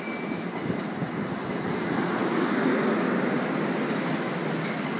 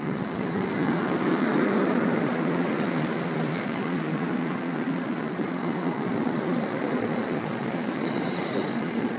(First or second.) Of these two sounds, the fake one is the second